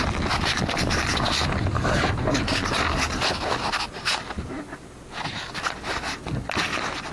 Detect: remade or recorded recorded